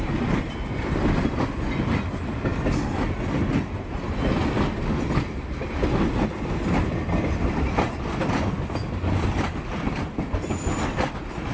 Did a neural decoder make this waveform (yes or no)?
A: no